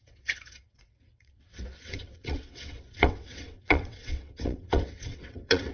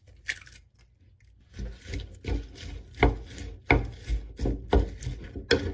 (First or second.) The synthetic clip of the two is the first